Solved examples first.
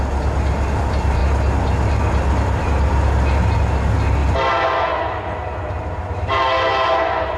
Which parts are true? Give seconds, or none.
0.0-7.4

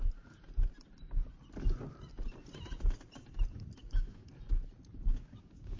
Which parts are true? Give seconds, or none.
0.0-3.8; 4.3-5.1

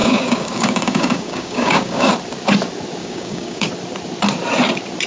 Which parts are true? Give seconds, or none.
2.1-3.0; 3.7-5.1

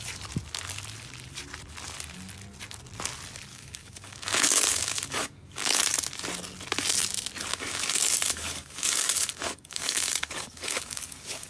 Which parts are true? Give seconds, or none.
0.0-3.5; 5.8-7.5

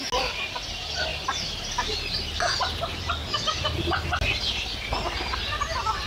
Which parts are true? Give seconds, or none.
0.0-6.1

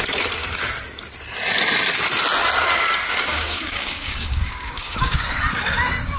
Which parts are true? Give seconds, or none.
0.0-3.3; 5.2-6.2

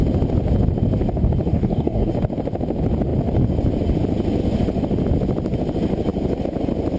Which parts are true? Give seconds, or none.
0.0-1.5; 2.1-7.0

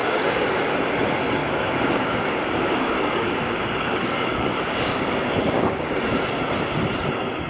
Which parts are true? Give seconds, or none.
0.7-1.4; 5.9-7.5